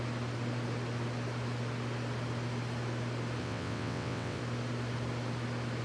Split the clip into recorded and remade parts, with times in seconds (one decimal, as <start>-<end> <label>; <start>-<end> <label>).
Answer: 0.0-3.4 recorded; 3.4-4.4 remade; 4.4-5.8 recorded